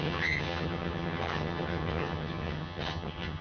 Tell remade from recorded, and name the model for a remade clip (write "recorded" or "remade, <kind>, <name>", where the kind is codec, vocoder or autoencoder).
remade, vocoder, HiFi-GAN